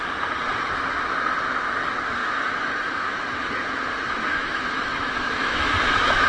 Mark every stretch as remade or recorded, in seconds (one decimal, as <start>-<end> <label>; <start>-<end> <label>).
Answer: 0.0-2.2 recorded; 2.2-6.3 remade